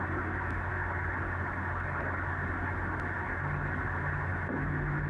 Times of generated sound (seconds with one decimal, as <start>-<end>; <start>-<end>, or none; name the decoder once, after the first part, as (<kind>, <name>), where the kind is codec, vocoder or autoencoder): 4.3-5.1 (autoencoder, DAC-VAE)